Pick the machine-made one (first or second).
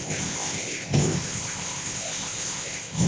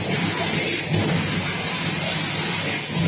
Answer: first